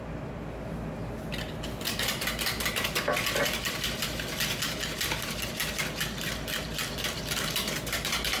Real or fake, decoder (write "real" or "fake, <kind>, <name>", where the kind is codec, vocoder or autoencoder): real